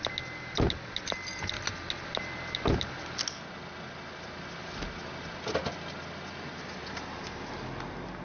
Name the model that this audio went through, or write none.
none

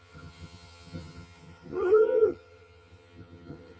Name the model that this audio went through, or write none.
vocoder, HiFi-GAN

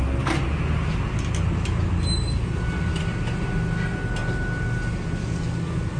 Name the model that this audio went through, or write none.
none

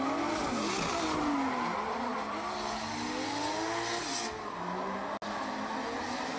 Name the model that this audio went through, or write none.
none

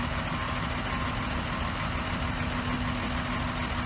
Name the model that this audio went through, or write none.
none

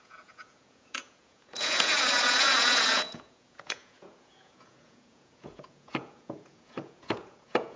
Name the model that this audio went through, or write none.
vocoder, Vocos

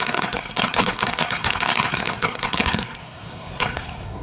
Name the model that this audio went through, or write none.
codec, SNAC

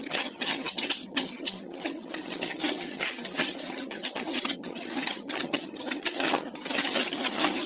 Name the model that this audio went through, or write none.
vocoder, HiFi-GAN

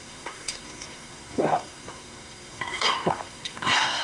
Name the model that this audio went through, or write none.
codec, SNAC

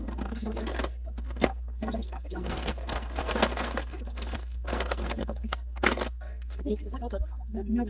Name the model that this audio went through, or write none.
codec, SNAC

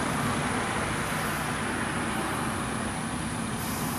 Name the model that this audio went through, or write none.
none